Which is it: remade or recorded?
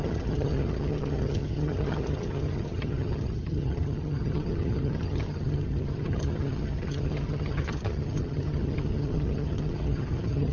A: remade